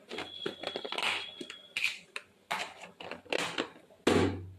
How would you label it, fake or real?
real